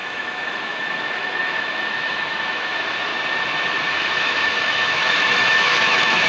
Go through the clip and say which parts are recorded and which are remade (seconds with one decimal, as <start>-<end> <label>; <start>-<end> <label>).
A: 0.0-3.1 remade; 3.1-3.9 recorded; 3.9-6.3 remade